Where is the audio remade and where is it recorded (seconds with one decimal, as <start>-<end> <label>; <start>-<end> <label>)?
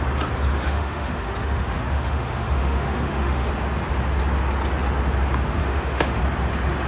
0.0-0.5 recorded; 0.5-3.5 remade; 3.5-5.6 recorded; 5.6-6.2 remade; 6.2-6.9 recorded